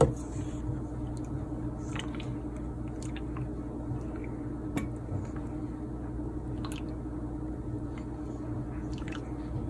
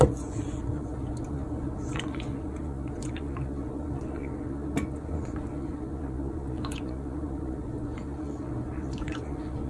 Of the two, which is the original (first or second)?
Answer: first